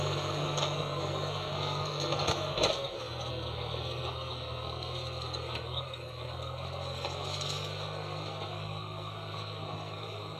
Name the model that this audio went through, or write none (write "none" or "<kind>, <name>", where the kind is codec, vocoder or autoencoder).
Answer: codec, SNAC